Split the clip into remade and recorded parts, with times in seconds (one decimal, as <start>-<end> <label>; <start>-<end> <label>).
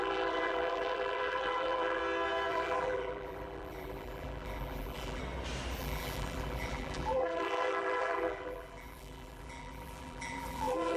0.0-2.0 remade; 2.0-2.5 recorded; 2.5-5.2 remade; 5.2-5.8 recorded; 5.8-11.0 remade